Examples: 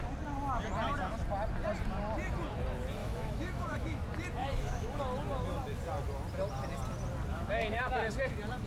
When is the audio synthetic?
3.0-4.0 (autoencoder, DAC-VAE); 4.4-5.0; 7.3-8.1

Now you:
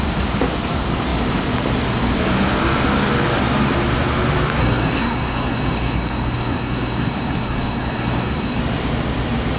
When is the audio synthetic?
4.6-8.6 (codec, SNAC)